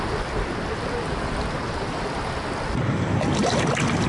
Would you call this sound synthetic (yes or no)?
no